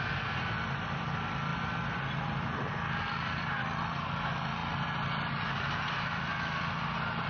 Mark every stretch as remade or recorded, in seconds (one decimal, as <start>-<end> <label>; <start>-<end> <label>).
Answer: 0.0-7.3 recorded